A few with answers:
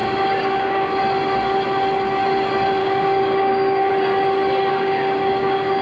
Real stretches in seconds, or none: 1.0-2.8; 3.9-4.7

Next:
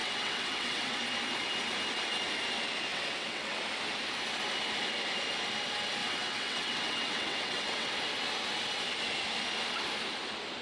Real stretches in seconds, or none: 1.0-2.9; 3.6-6.0; 7.9-10.6

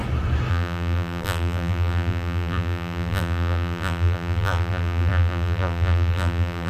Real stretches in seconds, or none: 0.0-0.5

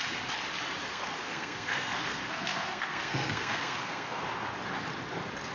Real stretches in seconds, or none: 0.0-0.9; 4.2-5.5

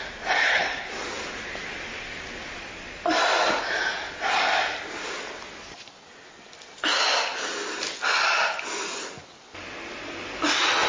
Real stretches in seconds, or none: 0.0-0.4; 0.9-10.9

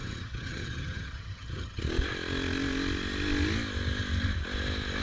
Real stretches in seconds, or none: 1.8-5.0

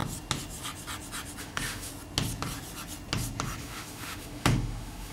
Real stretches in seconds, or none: 0.0-1.4; 1.9-3.6